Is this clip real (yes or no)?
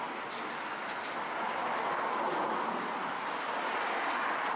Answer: yes